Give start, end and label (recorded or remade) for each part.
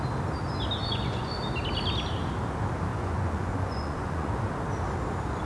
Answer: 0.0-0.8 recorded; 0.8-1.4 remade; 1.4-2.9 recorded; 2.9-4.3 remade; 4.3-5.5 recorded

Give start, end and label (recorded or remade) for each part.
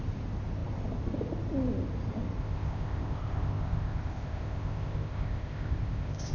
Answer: 0.0-2.4 recorded; 2.4-6.3 remade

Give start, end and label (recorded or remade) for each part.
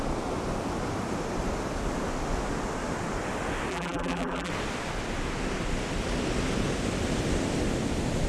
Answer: 0.0-3.7 recorded; 3.7-4.5 remade; 4.5-8.3 recorded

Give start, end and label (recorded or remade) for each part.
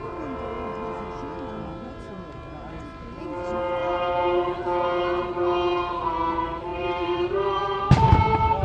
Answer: 0.0-6.7 recorded; 6.7-7.8 remade; 7.8-8.6 recorded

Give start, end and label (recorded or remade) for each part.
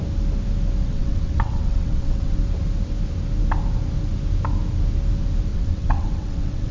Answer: 0.0-0.8 recorded; 0.8-2.4 remade; 2.4-5.5 recorded; 5.5-6.7 remade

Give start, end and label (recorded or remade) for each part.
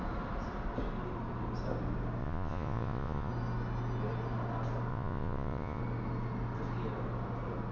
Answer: 0.0-2.2 recorded; 2.2-3.3 remade; 3.3-4.9 recorded; 4.9-5.8 remade; 5.8-7.7 recorded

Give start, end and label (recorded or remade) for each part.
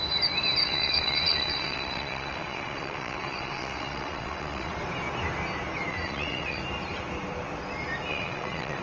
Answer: 0.0-0.6 recorded; 0.6-4.7 remade; 4.7-5.9 recorded; 5.9-6.6 remade; 6.6-8.1 recorded; 8.1-8.8 remade